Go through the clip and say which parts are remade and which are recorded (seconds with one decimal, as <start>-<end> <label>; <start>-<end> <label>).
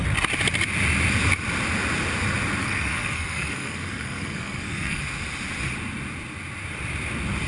0.0-2.6 recorded; 2.6-5.0 remade; 5.0-7.5 recorded